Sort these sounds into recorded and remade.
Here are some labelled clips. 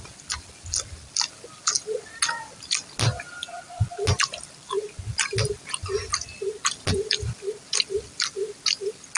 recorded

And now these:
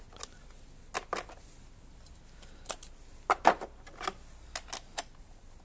recorded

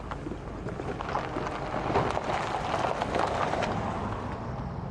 recorded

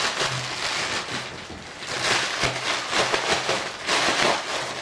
recorded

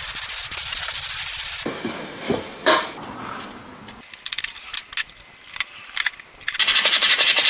recorded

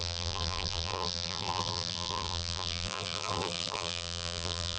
remade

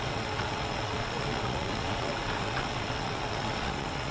remade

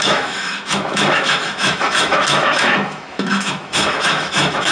remade